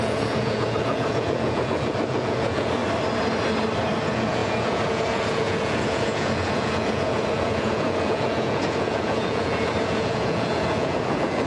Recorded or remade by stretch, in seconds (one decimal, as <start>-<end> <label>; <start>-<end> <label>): 0.0-2.8 remade; 2.8-4.0 recorded; 4.0-11.5 remade